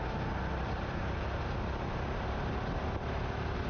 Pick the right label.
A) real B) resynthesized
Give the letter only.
A